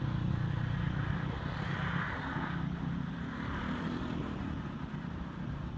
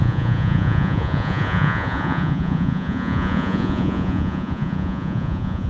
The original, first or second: first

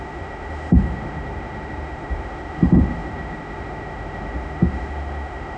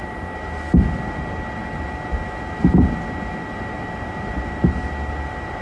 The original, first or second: second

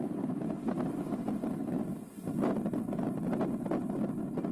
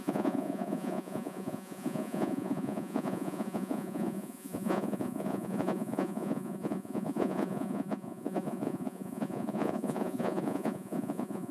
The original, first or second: first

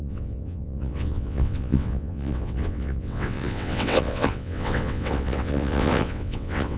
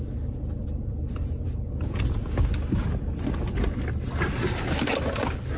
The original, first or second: second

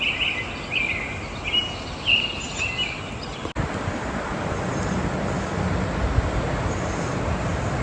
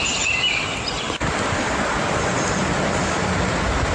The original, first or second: first